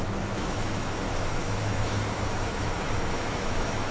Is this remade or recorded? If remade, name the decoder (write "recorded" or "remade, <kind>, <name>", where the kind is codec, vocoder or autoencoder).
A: remade, autoencoder, DAC-VAE